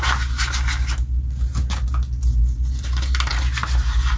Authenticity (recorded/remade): recorded